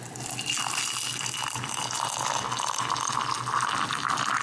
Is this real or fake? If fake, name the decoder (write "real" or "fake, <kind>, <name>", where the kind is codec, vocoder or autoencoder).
real